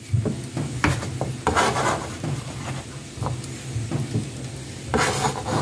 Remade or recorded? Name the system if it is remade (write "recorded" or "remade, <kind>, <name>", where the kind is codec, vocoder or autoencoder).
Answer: recorded